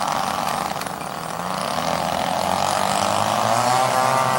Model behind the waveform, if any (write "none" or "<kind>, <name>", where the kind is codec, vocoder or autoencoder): none